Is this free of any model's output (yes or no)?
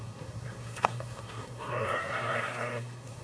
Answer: no